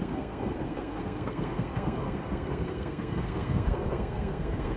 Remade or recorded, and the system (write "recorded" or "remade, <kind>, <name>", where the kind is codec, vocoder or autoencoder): remade, codec, SNAC